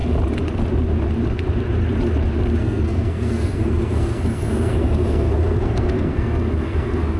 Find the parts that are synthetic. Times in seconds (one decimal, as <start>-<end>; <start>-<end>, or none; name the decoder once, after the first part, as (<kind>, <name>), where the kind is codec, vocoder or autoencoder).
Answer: 2.6-7.2 (codec, SNAC)